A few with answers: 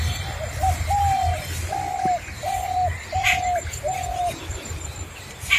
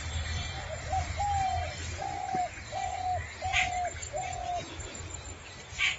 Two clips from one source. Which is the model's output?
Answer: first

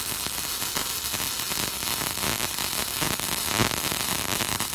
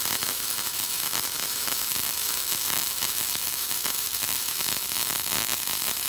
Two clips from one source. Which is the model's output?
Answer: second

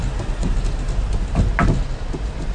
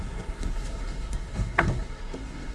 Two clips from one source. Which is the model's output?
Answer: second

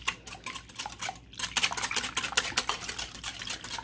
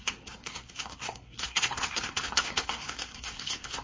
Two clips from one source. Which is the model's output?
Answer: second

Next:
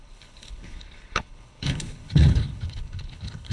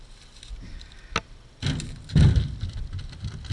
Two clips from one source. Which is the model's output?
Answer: first